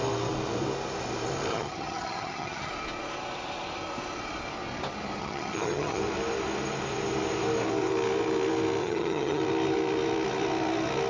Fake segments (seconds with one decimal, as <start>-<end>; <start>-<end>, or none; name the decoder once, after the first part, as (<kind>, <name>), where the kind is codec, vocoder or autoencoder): 1.5-2.7 (vocoder, HiFi-GAN); 5.2-6.0; 8.8-9.4